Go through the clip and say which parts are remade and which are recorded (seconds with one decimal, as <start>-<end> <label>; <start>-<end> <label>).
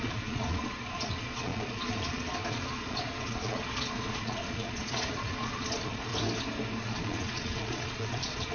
0.0-6.1 remade; 6.1-6.8 recorded; 6.8-8.5 remade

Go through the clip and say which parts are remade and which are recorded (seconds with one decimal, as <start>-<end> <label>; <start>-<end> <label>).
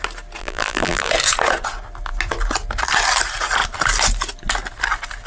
0.0-0.4 recorded; 0.4-1.1 remade; 1.1-5.3 recorded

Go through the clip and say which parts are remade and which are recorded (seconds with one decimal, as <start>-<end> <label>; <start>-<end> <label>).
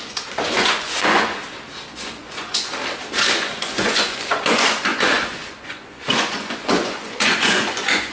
0.0-1.4 remade; 1.4-1.9 recorded; 1.9-2.7 remade; 2.7-3.3 recorded; 3.3-8.1 remade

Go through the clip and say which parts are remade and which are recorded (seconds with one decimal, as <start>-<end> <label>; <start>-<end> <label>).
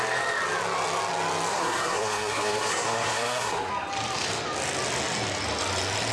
0.0-1.5 recorded; 1.5-3.7 remade; 3.7-6.1 recorded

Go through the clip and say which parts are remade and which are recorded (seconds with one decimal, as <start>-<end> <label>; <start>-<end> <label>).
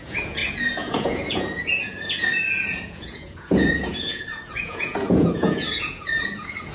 0.0-6.7 remade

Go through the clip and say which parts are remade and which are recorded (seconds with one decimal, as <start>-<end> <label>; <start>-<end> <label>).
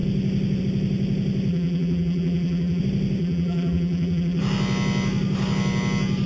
0.0-1.5 recorded; 1.5-2.8 remade; 2.8-3.2 recorded; 3.2-4.4 remade; 4.4-6.3 recorded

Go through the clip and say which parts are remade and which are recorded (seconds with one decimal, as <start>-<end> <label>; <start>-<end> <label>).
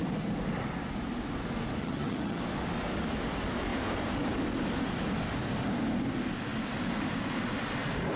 0.0-1.8 recorded; 1.8-2.4 remade; 2.4-8.2 recorded